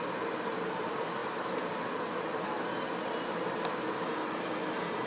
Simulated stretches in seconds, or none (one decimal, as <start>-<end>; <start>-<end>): none